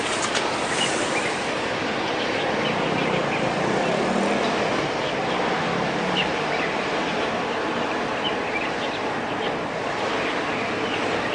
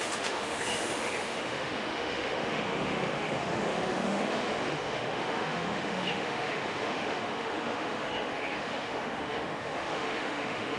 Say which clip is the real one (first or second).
first